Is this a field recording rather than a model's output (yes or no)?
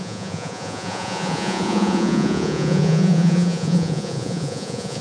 no